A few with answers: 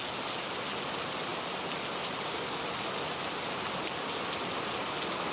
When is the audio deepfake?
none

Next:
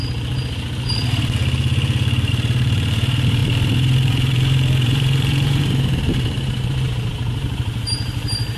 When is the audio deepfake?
2.3-8.6

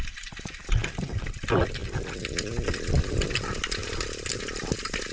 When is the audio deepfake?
none

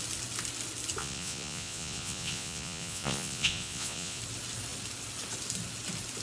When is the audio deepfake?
1.0-4.2

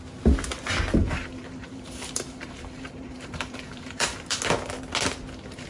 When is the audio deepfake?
1.0-4.4

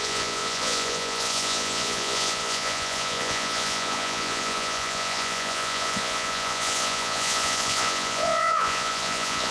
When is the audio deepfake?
0.0-9.5